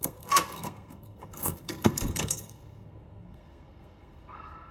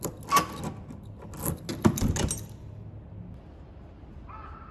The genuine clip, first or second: second